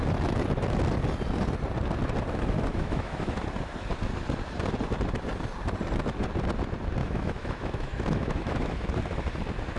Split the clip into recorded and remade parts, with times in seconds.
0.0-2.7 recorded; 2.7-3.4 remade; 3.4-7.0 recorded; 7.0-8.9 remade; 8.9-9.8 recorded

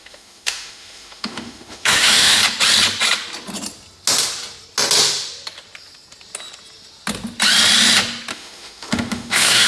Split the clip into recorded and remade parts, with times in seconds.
0.0-2.4 remade; 2.4-8.3 recorded; 8.3-9.7 remade

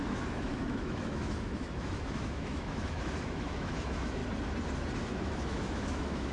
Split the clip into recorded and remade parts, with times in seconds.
0.0-4.2 remade; 4.2-5.2 recorded; 5.2-6.3 remade

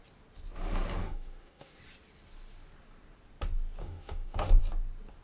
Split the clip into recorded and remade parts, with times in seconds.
0.0-1.0 recorded; 1.0-1.8 remade; 1.8-3.8 recorded; 3.8-4.6 remade; 4.6-5.2 recorded

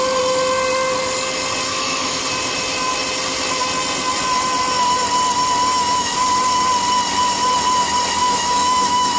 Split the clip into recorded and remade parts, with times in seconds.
0.0-1.7 recorded; 1.7-2.2 remade; 2.2-5.7 recorded; 5.7-6.2 remade; 6.2-8.2 recorded; 8.2-9.2 remade

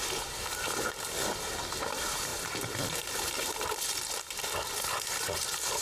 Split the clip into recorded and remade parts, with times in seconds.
0.0-5.8 recorded